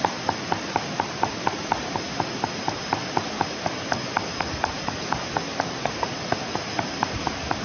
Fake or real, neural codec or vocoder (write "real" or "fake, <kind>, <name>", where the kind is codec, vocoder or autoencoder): real